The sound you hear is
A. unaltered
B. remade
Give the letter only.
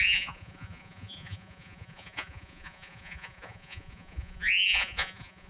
B